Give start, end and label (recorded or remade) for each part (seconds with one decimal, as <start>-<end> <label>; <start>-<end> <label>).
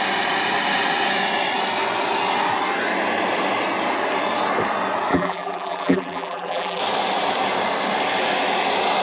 0.0-5.1 recorded; 5.1-6.8 remade; 6.8-9.0 recorded